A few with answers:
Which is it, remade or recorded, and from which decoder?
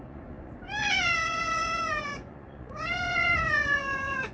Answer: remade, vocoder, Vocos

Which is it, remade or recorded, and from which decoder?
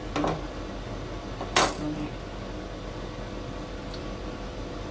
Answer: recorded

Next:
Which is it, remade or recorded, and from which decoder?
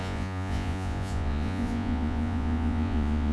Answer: remade, vocoder, Vocos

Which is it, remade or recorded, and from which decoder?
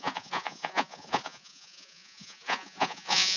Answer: remade, vocoder, Vocos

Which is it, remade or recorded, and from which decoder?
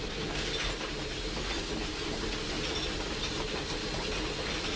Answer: recorded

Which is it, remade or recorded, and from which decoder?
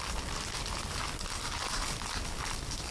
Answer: recorded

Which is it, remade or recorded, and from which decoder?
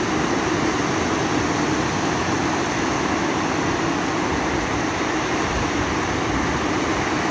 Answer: recorded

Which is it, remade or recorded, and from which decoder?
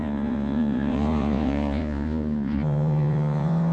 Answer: remade, vocoder, Vocos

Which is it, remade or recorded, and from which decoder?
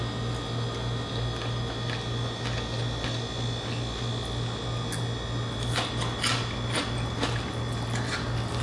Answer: recorded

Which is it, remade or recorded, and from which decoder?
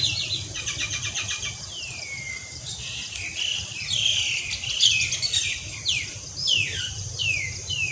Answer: recorded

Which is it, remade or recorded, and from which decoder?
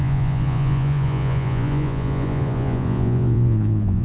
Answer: remade, vocoder, Vocos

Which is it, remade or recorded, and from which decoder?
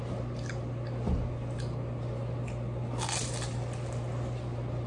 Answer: recorded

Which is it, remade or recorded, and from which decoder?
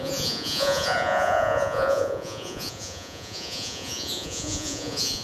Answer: remade, vocoder, Vocos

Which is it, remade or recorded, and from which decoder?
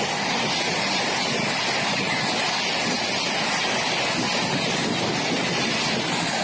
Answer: recorded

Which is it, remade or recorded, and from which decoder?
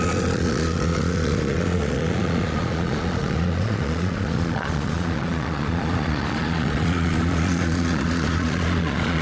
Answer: remade, vocoder, Vocos